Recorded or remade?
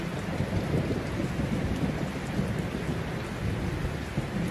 recorded